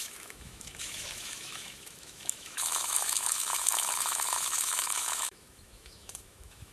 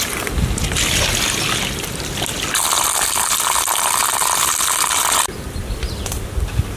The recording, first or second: second